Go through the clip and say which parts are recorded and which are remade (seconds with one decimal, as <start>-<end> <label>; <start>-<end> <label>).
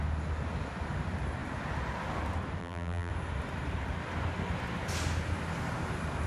0.0-2.6 recorded; 2.6-3.1 remade; 3.1-6.3 recorded